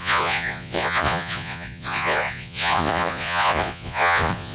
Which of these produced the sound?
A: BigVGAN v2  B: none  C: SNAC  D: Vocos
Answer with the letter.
D